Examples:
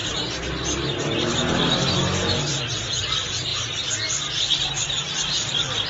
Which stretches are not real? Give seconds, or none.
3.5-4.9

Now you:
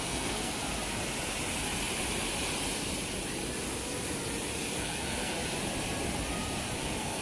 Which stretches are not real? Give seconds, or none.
0.0-0.5; 4.8-5.4; 6.8-7.2

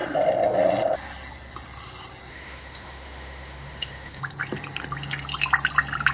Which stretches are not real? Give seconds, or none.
2.3-4.2

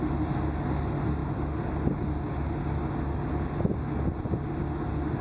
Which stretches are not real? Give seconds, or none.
none

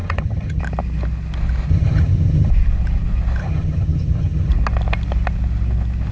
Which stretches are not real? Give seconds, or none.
0.0-0.6; 1.7-2.5; 3.4-4.5

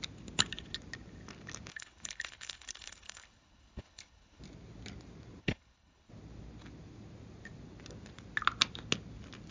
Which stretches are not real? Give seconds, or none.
1.7-4.4; 5.4-6.1

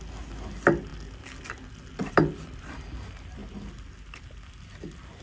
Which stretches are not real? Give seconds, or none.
none

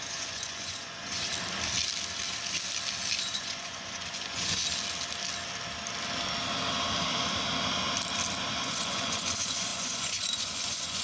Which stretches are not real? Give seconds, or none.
0.0-1.3; 3.2-4.6; 8.6-11.0